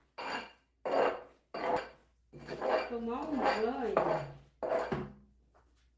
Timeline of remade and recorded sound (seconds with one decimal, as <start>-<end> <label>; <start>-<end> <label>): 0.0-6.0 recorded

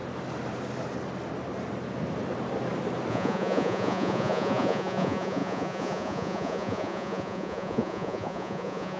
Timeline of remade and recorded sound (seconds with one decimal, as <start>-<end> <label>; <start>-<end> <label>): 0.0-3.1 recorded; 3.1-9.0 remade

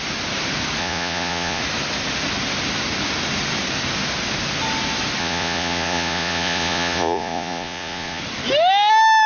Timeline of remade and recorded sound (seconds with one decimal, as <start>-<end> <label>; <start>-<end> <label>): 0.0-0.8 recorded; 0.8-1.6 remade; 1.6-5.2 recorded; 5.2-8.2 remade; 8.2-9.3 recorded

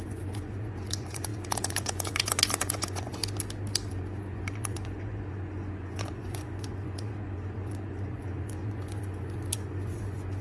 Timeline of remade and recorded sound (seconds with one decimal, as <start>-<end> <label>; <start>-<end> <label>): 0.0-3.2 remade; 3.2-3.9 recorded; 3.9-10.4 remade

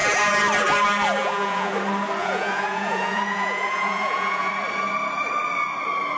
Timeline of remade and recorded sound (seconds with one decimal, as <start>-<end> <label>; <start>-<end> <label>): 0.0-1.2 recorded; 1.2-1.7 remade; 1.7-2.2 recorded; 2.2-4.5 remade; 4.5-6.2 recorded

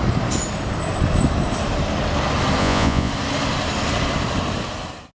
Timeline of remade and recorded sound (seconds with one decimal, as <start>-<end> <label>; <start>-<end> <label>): 0.0-2.6 recorded; 2.6-3.1 remade; 3.1-5.1 recorded

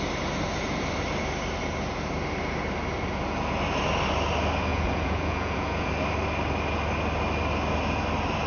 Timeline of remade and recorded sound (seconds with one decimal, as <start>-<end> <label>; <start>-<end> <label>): 0.0-4.7 recorded; 4.7-5.9 remade; 5.9-8.5 recorded